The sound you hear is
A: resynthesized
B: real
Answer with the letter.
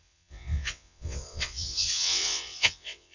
A